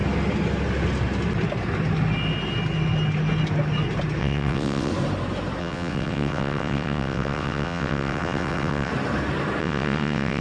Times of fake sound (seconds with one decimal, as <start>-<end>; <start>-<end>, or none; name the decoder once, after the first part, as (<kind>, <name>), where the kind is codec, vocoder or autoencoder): 4.2-4.9 (vocoder, WaveNeXt); 5.6-8.9; 9.6-10.4

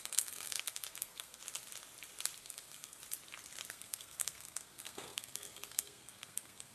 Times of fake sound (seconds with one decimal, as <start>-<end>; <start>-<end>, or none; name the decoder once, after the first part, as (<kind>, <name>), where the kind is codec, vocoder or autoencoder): 0.0-1.4 (codec, SNAC); 2.4-3.0; 3.7-6.7

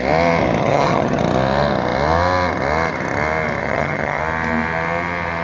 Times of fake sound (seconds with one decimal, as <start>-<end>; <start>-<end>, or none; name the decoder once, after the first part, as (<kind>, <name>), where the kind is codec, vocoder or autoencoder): 0.6-1.2 (vocoder, HiFi-GAN); 3.6-4.2

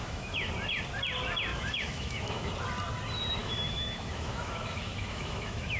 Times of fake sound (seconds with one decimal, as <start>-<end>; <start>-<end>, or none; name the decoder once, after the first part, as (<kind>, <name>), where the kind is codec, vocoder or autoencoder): 0.0-0.5 (autoencoder, DAC-VAE); 1.5-2.5; 3.4-5.8

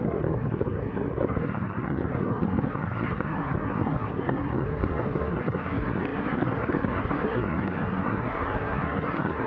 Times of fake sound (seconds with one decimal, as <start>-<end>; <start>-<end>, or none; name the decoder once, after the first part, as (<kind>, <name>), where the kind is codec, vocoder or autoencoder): 0.0-9.5 (codec, SNAC)

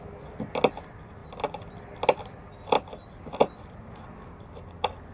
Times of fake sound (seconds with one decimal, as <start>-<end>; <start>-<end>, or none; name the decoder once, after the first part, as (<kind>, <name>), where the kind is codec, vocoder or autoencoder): none

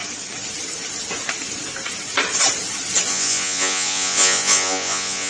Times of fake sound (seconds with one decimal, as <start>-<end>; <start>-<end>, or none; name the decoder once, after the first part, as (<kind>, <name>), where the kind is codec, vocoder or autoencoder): 3.1-5.3 (vocoder, Vocos)